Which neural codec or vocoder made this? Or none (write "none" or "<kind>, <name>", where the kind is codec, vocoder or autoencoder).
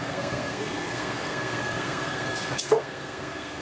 codec, SNAC